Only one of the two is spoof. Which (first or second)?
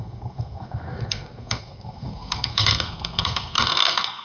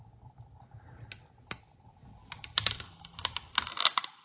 first